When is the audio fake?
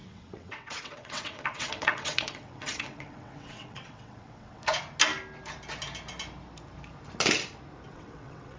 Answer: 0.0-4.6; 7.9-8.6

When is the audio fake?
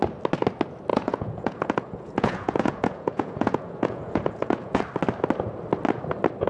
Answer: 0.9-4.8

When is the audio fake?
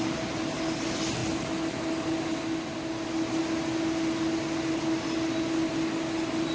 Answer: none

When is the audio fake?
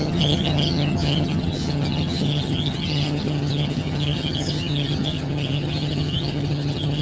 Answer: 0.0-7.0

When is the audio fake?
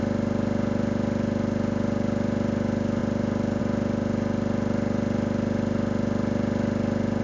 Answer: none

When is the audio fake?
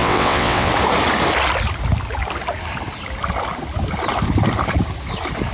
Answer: 0.0-0.7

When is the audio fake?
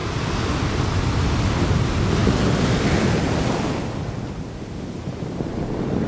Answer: none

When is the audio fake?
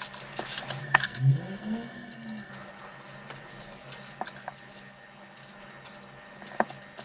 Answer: 0.8-2.5